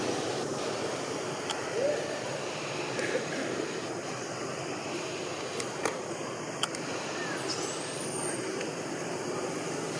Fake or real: real